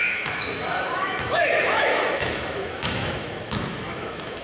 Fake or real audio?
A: fake